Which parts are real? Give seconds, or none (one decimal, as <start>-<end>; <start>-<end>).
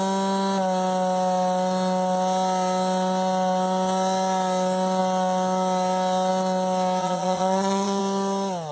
0.0-7.0; 8.0-8.7